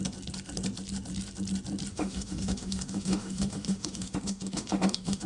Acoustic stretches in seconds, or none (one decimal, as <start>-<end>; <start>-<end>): 0.0-1.9